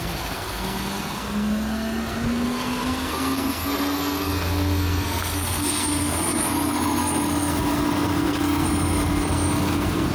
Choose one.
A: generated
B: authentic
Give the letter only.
A